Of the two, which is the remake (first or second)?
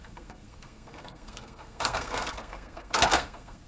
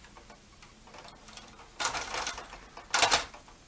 first